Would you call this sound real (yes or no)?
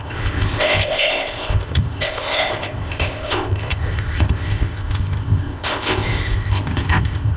no